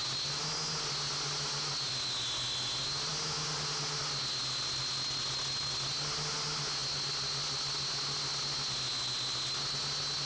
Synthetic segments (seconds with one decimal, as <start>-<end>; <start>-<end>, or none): none